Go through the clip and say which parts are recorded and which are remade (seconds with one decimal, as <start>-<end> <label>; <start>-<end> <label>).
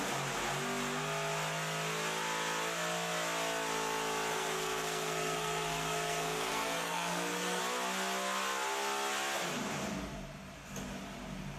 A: 0.0-4.3 recorded; 4.3-7.6 remade; 7.6-11.6 recorded